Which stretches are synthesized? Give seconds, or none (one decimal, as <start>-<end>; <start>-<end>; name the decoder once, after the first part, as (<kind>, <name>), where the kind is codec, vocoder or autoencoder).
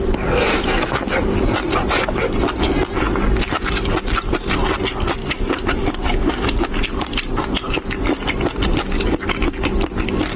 5.2-6.7 (codec, DAC)